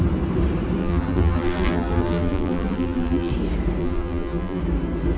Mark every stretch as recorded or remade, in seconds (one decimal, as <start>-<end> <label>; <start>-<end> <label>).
0.0-0.8 recorded; 0.8-3.3 remade; 3.3-3.8 recorded; 3.8-4.6 remade; 4.6-5.2 recorded